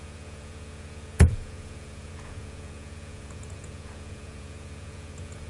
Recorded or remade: remade